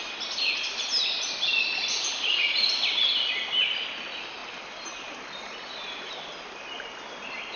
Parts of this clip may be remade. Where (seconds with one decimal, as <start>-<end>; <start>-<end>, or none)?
none

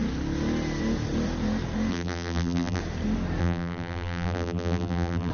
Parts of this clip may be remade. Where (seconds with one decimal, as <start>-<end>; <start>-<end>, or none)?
1.9-2.8; 3.4-5.3

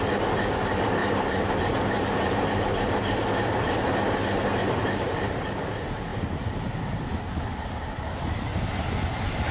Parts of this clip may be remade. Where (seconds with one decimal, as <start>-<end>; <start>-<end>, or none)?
1.0-2.6; 4.6-5.4

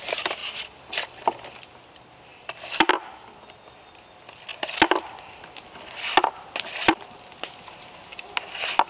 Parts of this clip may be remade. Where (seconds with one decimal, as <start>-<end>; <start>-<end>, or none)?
0.4-1.6; 2.3-2.9

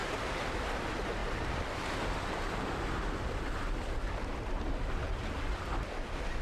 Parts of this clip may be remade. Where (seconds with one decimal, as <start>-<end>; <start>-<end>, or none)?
0.0-0.5; 1.2-3.7

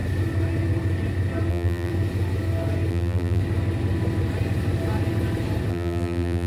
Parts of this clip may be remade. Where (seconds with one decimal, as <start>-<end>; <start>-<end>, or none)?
1.5-1.9; 2.9-3.4; 5.7-6.5

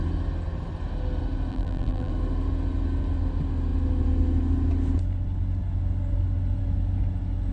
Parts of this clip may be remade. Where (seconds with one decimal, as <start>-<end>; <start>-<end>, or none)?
1.5-2.1